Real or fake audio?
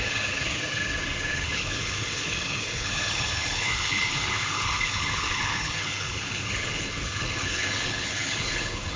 fake